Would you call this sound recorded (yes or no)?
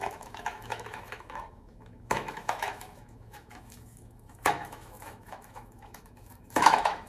no